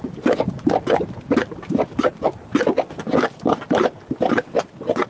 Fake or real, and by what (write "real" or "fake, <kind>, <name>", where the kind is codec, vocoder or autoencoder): real